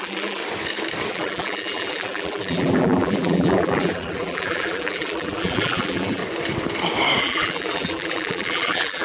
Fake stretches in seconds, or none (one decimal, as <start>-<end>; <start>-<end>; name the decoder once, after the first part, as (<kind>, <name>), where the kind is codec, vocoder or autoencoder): 0.0-0.4 (vocoder, BigVGAN v2); 1.1-6.2; 7.2-9.0